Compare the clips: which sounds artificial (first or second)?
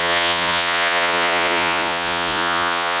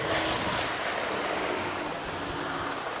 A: first